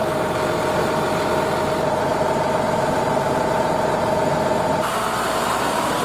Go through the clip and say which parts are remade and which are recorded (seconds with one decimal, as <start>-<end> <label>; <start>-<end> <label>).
0.0-6.0 recorded